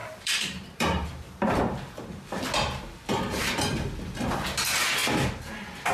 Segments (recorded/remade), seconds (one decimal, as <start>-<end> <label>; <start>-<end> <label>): 0.0-1.6 remade; 1.6-5.9 recorded